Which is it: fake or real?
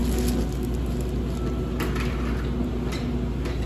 real